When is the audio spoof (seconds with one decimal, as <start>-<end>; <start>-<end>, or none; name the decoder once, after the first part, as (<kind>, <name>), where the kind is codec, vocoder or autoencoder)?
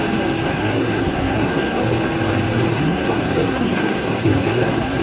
0.5-1.8 (codec, SNAC); 2.7-5.0